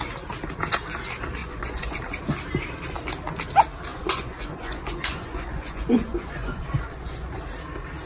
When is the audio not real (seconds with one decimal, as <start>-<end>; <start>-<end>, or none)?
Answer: 1.4-2.0; 3.9-7.4